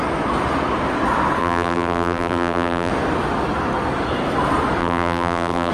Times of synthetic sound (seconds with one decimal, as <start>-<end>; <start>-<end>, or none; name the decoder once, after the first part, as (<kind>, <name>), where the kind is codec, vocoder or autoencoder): 1.4-2.9 (vocoder, BigVGAN v2); 4.8-5.7